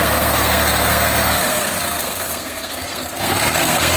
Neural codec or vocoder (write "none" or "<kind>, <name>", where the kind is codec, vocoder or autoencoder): codec, SNAC